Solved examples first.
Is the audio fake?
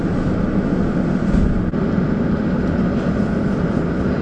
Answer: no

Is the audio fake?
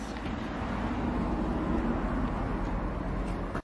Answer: no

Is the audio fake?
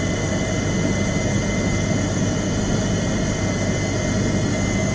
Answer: no